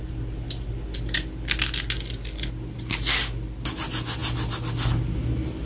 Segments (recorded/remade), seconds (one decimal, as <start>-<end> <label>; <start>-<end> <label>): 0.0-5.7 recorded